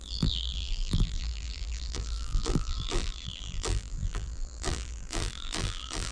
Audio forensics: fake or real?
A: fake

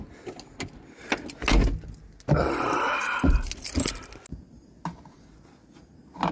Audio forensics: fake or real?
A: real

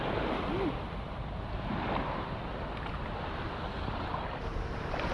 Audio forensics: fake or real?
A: real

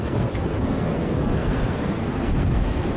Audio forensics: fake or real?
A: fake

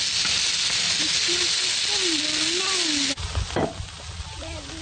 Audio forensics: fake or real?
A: real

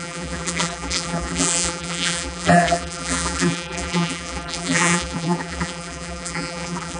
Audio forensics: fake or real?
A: fake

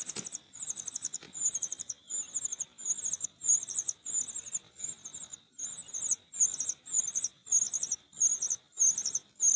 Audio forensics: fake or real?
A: real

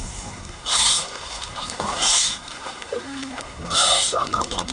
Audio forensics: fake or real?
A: fake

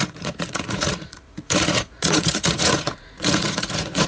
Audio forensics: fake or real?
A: fake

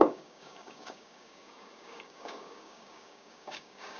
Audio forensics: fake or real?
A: fake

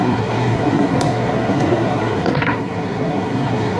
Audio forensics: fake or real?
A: fake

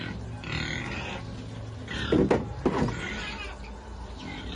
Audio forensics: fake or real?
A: real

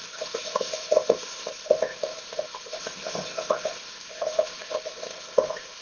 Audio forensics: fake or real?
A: fake